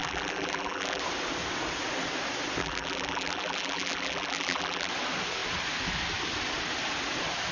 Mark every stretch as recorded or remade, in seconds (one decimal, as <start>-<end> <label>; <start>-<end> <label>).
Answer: 0.0-1.0 remade; 1.0-2.6 recorded; 2.6-4.9 remade; 4.9-7.5 recorded